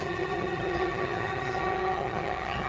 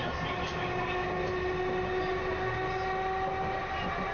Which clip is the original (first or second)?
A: second